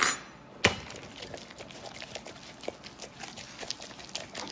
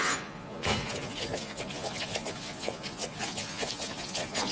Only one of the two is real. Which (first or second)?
first